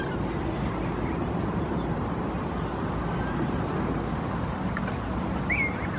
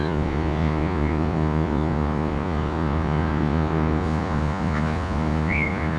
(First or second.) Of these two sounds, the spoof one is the second